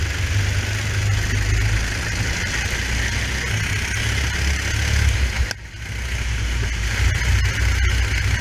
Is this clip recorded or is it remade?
recorded